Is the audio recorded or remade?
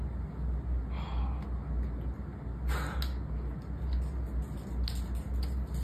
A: recorded